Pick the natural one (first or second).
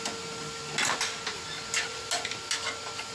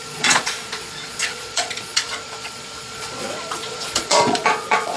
first